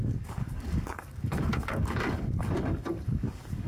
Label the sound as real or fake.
fake